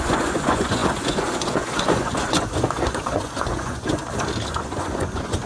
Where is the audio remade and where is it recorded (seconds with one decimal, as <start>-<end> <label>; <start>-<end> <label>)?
0.0-4.0 remade; 4.0-4.5 recorded; 4.5-5.5 remade